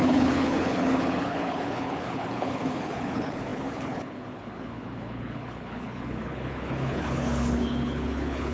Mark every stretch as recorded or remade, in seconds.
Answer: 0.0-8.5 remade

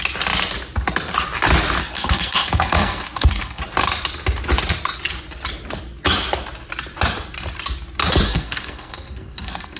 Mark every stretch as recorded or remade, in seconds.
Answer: 0.0-1.8 recorded; 1.8-3.6 remade; 3.6-8.3 recorded; 8.3-9.8 remade